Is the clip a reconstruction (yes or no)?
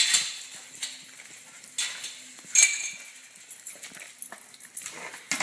no